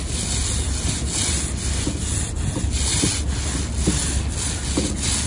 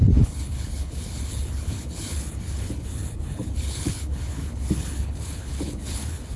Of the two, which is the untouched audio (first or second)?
first